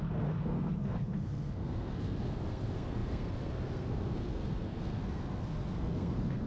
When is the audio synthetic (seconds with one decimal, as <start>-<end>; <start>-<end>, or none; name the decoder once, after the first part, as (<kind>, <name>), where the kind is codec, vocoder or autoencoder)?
0.0-6.5 (codec, SNAC)

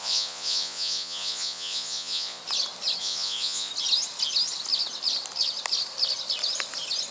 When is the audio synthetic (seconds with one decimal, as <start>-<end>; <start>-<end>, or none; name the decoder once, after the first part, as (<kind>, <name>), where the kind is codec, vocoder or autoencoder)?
0.0-2.4 (vocoder, Vocos); 3.0-3.7

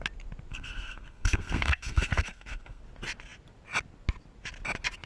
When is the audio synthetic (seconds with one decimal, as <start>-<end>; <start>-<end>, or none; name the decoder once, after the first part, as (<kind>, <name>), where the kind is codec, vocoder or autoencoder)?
0.5-2.8 (codec, SNAC)